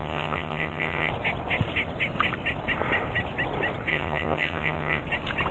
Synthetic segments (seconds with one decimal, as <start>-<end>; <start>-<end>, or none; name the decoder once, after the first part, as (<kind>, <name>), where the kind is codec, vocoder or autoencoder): 0.0-1.1 (vocoder, HiFi-GAN); 3.9-5.0